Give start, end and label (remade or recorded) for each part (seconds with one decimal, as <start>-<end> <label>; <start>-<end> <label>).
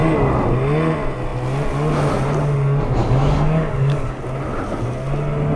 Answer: 0.0-3.0 recorded; 3.0-4.2 remade; 4.2-5.6 recorded